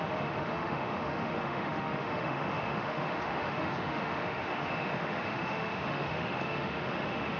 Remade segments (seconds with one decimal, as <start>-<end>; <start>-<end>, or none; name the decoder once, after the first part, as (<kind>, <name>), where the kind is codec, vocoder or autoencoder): 0.0-7.4 (autoencoder, DAC-VAE)